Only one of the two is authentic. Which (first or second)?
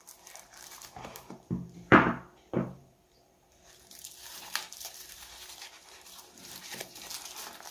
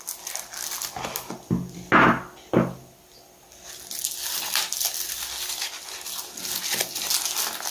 second